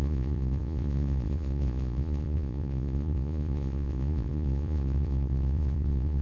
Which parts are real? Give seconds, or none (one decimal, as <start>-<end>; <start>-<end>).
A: none